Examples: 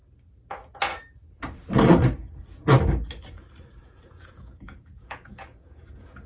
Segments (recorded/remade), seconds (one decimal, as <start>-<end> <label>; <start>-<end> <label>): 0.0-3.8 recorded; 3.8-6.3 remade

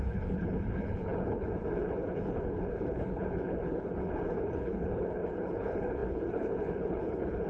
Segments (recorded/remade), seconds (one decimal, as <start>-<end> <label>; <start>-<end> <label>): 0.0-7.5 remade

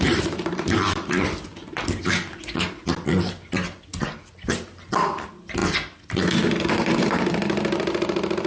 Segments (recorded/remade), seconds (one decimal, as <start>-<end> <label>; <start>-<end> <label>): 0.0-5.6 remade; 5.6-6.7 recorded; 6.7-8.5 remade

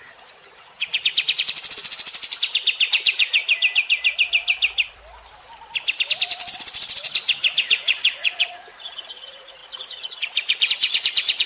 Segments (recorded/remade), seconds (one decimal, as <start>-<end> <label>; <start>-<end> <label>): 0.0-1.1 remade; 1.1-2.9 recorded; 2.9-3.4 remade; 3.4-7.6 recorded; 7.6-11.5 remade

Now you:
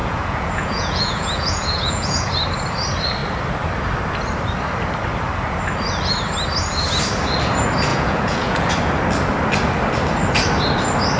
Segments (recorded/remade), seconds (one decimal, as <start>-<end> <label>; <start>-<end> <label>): 0.0-2.3 remade; 2.3-7.9 recorded; 7.9-8.7 remade; 8.7-11.2 recorded

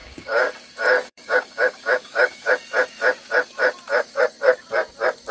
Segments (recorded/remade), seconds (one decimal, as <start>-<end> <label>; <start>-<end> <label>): 0.0-0.5 remade; 0.5-1.1 recorded; 1.1-2.5 remade; 2.5-5.3 recorded